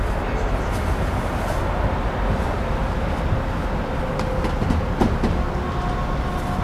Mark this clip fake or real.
real